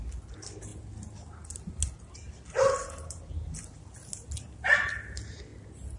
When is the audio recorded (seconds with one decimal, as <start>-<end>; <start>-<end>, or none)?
0.0-6.0